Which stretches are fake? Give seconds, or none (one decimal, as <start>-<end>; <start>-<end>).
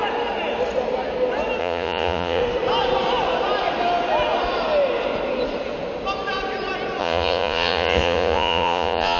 1.6-2.4; 7.0-9.2